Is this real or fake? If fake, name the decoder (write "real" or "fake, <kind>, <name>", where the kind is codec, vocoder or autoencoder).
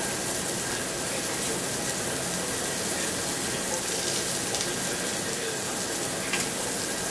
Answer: real